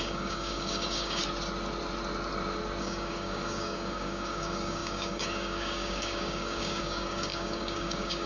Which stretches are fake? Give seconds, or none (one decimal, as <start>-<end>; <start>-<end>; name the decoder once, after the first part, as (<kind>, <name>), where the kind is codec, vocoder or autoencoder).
0.0-1.2 (codec, DAC); 2.8-8.3